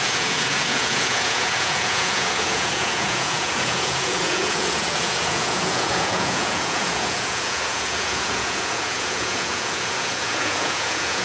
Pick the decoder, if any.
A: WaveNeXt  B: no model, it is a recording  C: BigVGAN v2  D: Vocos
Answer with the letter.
D